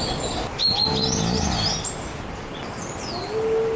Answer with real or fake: real